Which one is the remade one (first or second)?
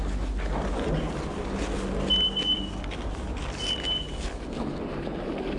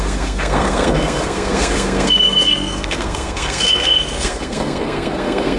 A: second